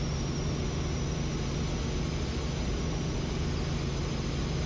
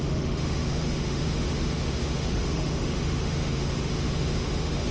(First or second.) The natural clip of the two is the first